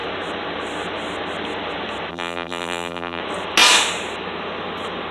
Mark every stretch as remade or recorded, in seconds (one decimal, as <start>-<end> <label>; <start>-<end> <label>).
0.0-2.1 recorded; 2.1-3.2 remade; 3.2-5.1 recorded